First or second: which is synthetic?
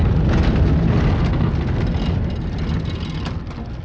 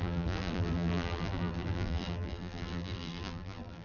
second